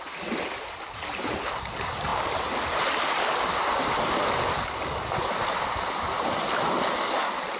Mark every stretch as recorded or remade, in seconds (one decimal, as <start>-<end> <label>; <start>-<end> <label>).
0.0-7.6 recorded